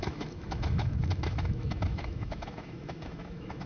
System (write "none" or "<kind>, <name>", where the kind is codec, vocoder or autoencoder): autoencoder, DAC-VAE